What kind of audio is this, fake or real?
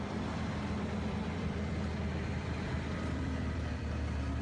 fake